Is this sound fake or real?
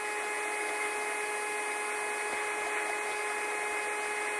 real